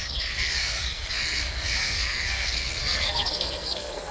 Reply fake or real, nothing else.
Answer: fake